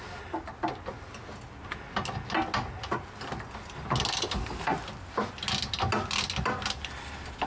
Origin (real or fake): real